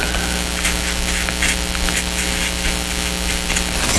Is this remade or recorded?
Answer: recorded